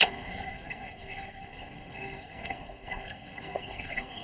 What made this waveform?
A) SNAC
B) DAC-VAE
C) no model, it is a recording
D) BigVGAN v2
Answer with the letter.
A